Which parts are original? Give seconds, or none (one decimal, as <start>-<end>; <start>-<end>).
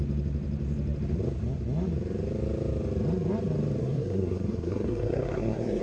0.0-3.8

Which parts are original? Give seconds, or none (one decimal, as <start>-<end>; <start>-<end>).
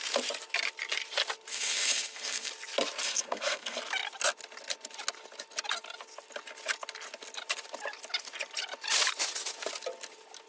0.0-1.5; 2.5-3.0; 3.8-10.5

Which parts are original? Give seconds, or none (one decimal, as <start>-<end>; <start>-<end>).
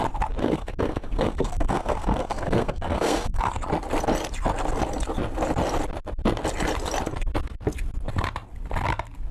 0.0-0.4; 3.5-9.3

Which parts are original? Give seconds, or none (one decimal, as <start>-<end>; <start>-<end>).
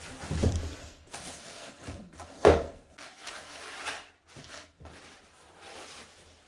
0.0-0.8; 3.6-4.4; 4.9-6.5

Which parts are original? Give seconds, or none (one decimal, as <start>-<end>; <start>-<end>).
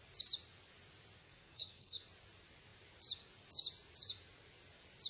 0.0-1.2; 2.0-5.1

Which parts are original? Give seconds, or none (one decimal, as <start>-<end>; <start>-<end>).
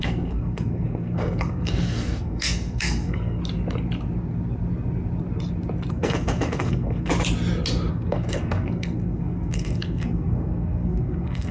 3.4-5.9; 7.1-7.9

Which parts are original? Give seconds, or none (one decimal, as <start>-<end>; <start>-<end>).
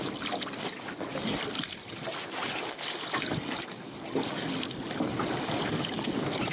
0.0-6.5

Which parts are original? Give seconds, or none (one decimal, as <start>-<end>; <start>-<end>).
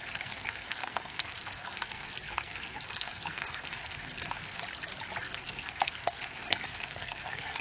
4.6-5.2